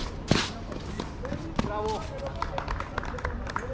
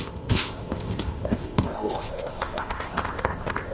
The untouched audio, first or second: first